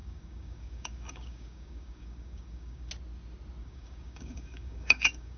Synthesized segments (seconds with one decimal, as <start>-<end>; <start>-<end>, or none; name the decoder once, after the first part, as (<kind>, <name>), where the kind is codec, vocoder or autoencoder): 0.0-2.9 (codec, DAC); 3.6-5.4